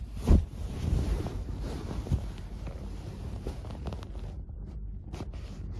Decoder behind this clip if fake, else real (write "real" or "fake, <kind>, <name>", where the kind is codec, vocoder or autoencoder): fake, vocoder, BigVGAN v2